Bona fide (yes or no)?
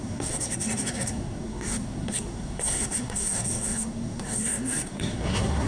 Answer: no